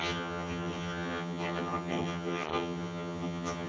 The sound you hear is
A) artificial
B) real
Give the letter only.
A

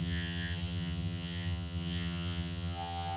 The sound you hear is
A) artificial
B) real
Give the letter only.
A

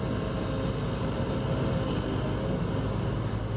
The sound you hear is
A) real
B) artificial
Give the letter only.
A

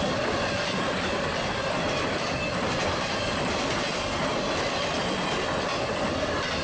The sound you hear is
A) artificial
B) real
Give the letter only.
B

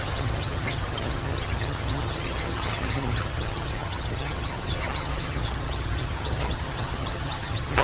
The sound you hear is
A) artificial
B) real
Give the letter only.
A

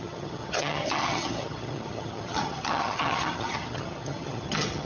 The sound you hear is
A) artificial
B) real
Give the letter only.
A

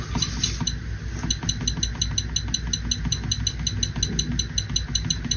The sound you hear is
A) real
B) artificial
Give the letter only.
A